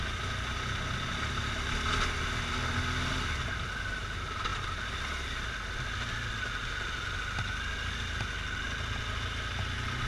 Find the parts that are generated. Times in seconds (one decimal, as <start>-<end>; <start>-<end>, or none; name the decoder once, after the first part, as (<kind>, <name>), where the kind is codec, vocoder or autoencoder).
none